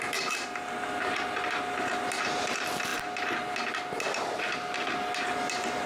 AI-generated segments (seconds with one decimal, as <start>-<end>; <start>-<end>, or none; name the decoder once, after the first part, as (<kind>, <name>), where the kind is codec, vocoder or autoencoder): none